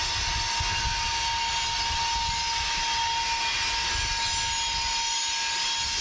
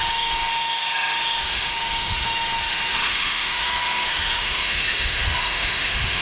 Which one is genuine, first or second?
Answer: first